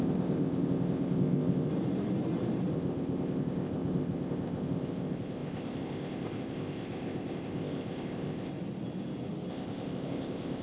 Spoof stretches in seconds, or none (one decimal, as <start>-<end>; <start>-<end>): 0.0-1.7; 2.7-8.5; 9.5-10.6